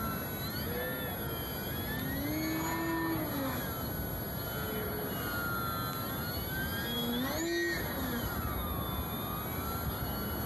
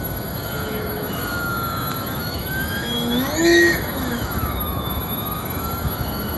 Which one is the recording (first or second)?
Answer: first